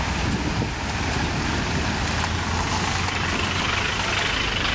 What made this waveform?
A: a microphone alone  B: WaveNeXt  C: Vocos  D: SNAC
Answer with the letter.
A